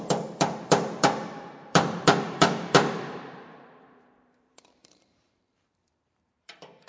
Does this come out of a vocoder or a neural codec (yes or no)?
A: yes